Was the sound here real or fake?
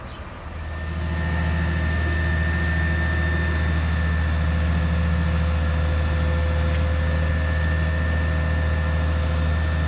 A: real